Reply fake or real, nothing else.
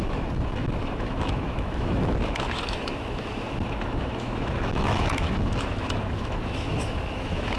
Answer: fake